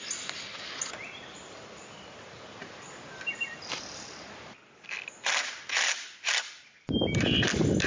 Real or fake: real